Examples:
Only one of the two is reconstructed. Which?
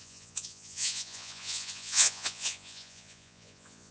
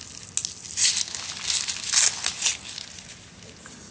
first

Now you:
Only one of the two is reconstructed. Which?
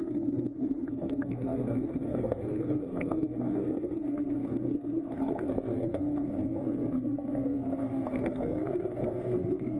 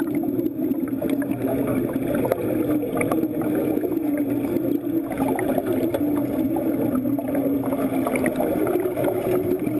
first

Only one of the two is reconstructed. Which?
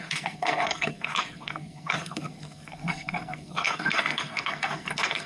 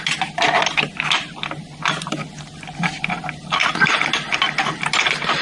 first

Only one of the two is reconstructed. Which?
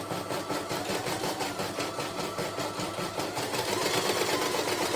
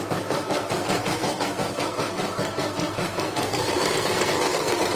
second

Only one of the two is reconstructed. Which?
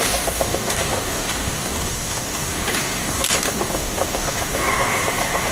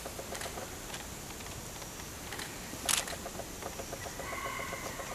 first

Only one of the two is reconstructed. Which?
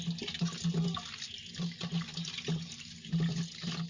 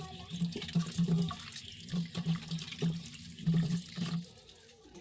second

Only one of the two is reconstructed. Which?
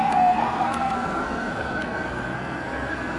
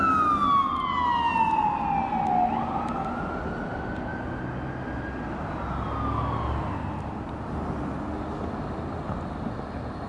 first